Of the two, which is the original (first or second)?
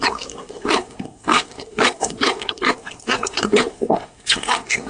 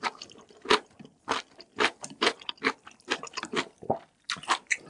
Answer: second